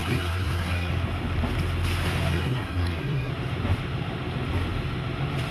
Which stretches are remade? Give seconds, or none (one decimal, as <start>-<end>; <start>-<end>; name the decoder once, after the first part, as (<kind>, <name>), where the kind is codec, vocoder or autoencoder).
0.0-0.9 (codec, SNAC); 2.3-3.3